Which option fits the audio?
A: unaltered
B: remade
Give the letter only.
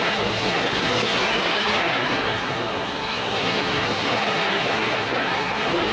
B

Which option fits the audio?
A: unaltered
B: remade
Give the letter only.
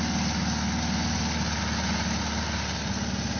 A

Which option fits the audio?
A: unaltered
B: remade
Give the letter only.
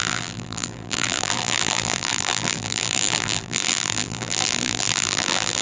B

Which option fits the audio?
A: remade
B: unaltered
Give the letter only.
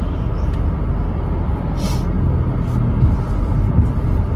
B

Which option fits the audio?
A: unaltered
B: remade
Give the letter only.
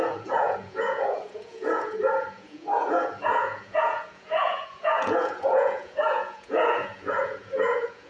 B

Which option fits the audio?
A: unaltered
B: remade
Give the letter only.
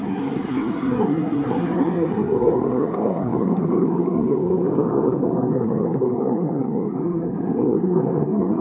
B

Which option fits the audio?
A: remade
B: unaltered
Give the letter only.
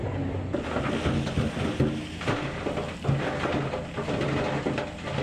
B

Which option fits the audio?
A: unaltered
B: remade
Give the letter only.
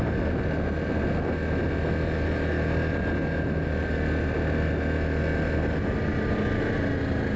A